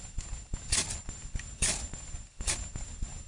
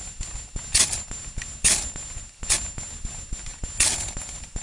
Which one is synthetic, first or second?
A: first